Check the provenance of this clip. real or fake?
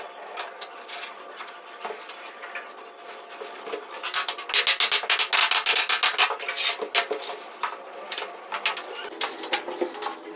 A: real